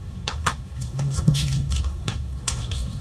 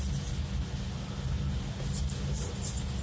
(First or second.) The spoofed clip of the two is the first